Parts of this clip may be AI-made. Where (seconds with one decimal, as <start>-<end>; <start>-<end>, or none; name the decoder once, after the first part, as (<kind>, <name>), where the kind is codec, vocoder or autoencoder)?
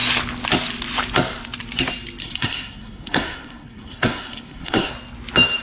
2.2-4.9 (codec, SNAC)